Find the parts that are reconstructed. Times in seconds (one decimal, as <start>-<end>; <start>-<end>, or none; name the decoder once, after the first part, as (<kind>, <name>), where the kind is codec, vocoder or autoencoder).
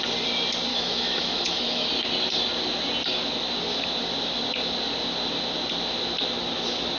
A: 0.7-1.9 (autoencoder, DAC-VAE)